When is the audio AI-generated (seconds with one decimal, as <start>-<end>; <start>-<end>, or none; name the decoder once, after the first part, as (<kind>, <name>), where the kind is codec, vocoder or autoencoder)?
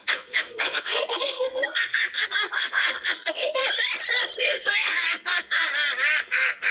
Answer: 0.0-3.6 (codec, SNAC); 4.4-5.7; 6.2-6.7